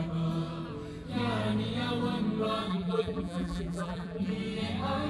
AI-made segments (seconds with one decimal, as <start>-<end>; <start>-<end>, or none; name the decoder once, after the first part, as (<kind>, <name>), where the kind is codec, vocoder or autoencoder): 2.7-4.3 (vocoder, BigVGAN v2)